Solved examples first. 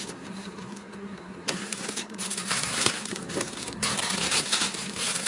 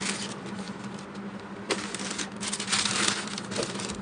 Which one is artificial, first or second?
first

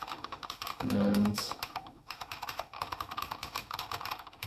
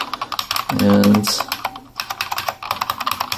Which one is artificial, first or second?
first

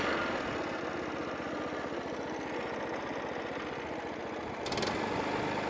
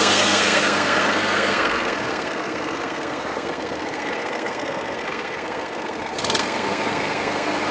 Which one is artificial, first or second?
second